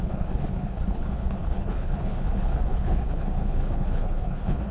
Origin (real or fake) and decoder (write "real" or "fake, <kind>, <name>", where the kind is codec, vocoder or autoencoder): fake, codec, HILCodec